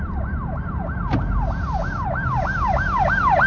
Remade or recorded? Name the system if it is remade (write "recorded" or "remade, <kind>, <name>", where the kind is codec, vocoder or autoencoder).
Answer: recorded